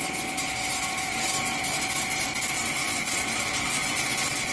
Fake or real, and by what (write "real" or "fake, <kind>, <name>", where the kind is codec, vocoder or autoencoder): real